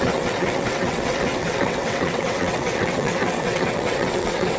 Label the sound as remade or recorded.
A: remade